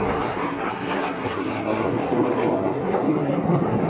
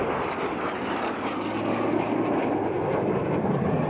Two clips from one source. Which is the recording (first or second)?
second